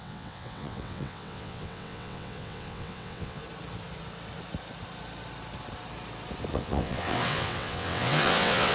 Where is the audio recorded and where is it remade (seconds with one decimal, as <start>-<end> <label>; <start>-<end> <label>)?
0.0-3.4 remade; 3.4-6.5 recorded; 6.5-8.7 remade